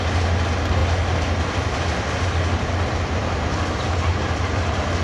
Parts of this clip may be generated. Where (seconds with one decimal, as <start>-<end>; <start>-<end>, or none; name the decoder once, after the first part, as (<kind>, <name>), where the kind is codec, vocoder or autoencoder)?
none